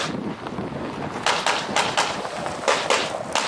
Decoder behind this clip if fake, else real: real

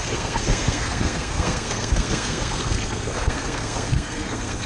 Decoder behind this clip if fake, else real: fake, codec, SNAC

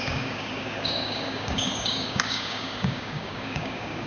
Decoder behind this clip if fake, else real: fake, codec, DAC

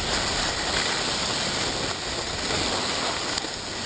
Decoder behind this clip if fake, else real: real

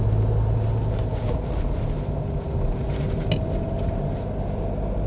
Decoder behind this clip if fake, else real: real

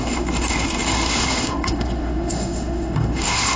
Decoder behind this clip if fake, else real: fake, autoencoder, DAC-VAE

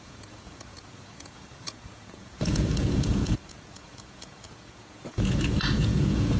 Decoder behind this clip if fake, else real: fake, vocoder, Vocos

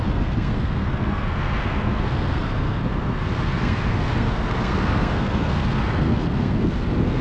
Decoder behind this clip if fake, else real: fake, codec, SNAC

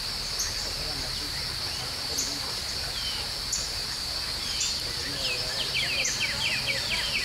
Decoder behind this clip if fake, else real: fake, vocoder, BigVGAN v2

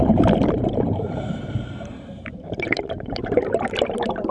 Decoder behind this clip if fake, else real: fake, vocoder, BigVGAN v2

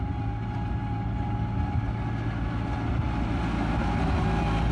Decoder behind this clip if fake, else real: real